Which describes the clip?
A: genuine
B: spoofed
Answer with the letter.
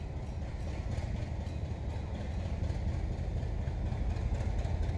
A